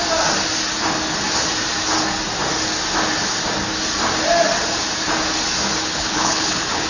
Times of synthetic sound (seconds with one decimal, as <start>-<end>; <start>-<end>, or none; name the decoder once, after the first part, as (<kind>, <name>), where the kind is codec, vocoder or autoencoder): 5.9-6.9 (codec, HILCodec)